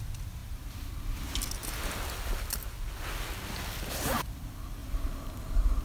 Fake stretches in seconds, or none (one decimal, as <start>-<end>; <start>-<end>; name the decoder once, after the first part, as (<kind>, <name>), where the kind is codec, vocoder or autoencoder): none